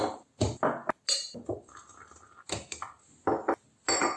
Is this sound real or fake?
real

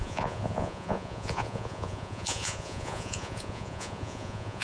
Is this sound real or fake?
fake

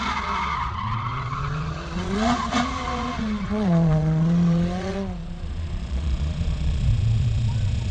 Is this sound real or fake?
fake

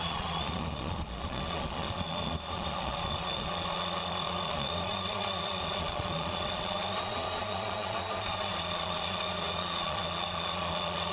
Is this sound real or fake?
fake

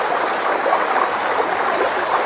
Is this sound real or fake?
real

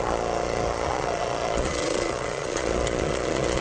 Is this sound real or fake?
fake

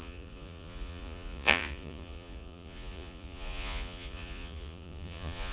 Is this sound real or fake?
fake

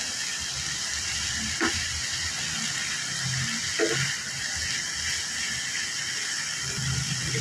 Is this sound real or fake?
real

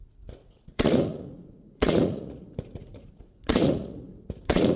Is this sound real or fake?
fake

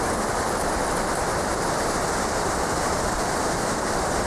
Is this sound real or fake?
real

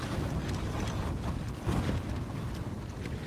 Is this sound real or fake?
real